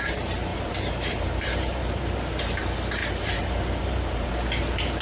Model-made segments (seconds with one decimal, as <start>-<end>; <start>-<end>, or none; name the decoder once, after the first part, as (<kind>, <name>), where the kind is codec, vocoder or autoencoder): 0.5-2.6 (vocoder, BigVGAN v2); 3.0-4.3